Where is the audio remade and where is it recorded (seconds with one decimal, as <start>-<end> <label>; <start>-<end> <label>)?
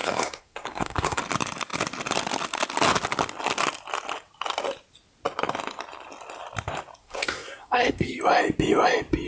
0.0-1.2 remade; 1.2-7.0 recorded; 7.0-8.2 remade; 8.2-9.3 recorded